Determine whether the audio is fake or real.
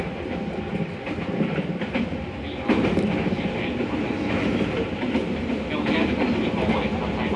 real